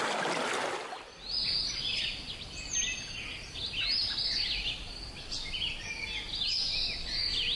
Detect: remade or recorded recorded